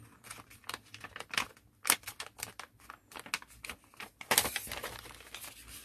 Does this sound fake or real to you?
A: real